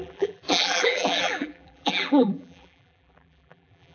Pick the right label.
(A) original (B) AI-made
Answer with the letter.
B